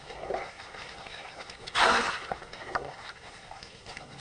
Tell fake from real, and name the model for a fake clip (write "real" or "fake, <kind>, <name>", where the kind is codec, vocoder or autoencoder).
fake, codec, SNAC